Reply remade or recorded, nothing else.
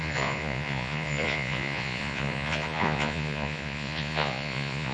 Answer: remade